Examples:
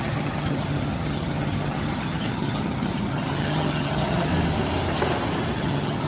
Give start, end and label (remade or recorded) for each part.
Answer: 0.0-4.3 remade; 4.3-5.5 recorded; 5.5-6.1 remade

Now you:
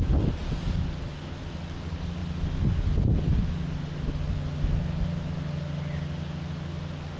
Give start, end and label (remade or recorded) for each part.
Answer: 0.0-7.2 recorded

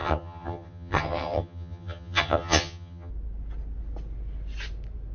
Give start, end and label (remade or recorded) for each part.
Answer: 0.0-3.1 remade; 3.1-5.1 recorded

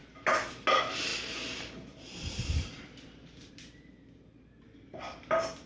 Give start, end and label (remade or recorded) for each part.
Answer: 0.0-5.7 recorded

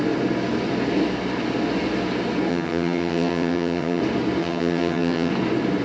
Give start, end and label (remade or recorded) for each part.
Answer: 0.0-2.5 recorded; 2.5-4.0 remade; 4.0-4.4 recorded; 4.4-5.3 remade; 5.3-5.8 recorded

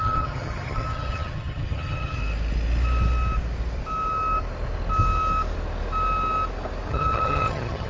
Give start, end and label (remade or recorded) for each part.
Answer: 0.0-2.2 remade; 2.2-6.9 recorded; 6.9-7.9 remade